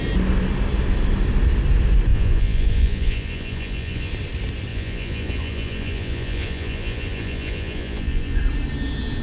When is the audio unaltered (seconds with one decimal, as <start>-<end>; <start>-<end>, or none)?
0.0-2.1; 4.1-4.7; 8.4-9.2

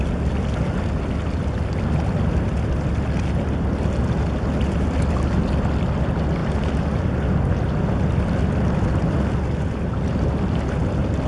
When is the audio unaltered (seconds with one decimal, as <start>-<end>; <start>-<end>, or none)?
0.0-11.3

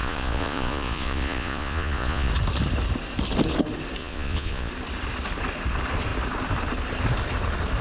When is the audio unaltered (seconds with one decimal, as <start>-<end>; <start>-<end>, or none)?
2.3-4.0; 4.7-7.8

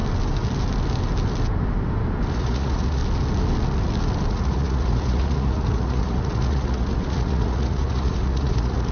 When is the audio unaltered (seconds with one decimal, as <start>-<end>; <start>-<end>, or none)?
0.0-2.3; 3.0-4.3